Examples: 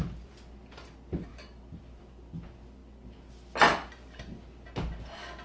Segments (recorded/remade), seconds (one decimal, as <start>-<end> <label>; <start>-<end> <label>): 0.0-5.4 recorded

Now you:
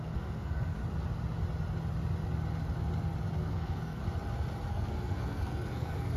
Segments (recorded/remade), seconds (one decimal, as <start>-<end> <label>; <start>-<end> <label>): 0.0-0.8 remade; 0.8-3.3 recorded; 3.3-4.0 remade; 4.0-4.7 recorded; 4.7-6.2 remade

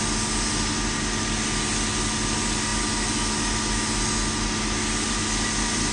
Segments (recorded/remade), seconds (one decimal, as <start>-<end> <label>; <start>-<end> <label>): 0.0-5.9 recorded

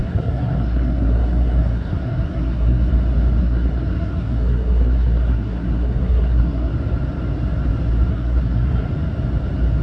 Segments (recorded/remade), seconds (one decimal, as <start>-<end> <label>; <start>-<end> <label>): 0.0-2.9 remade; 2.9-3.4 recorded; 3.4-6.7 remade; 6.7-8.1 recorded; 8.1-8.9 remade; 8.9-9.8 recorded

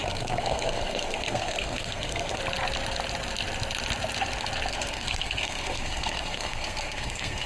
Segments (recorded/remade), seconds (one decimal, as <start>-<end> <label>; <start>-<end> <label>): 0.0-2.4 remade; 2.4-4.7 recorded; 4.7-7.5 remade

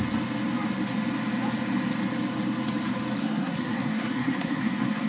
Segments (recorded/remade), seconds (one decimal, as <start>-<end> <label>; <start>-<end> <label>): 0.0-3.2 recorded; 3.2-5.1 remade